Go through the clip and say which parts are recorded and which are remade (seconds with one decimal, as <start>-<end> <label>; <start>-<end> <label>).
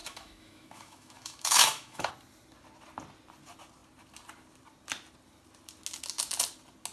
0.0-2.1 remade; 2.1-6.9 recorded